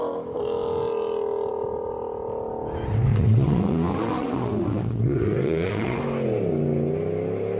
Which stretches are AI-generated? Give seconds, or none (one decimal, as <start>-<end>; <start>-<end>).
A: 3.1-6.0